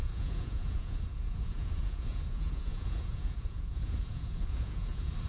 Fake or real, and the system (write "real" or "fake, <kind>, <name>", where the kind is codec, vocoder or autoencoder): fake, vocoder, Vocos